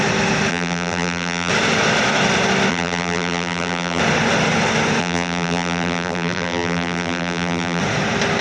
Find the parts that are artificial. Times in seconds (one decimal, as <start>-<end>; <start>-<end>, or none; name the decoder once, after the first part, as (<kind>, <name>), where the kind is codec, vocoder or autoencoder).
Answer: 0.5-1.5 (vocoder, BigVGAN v2); 2.7-4.0; 5.0-7.8